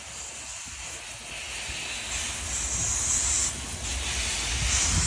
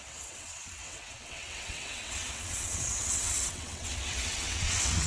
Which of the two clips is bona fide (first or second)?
first